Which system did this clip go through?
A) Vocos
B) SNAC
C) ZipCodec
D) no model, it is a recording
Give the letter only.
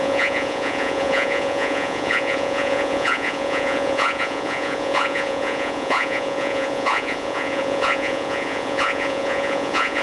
A